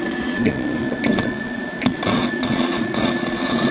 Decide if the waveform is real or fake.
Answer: fake